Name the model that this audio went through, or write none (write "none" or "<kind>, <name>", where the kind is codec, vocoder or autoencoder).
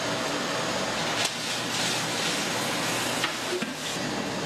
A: none